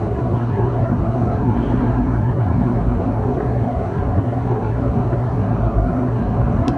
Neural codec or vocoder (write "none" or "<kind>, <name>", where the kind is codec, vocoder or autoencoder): codec, SNAC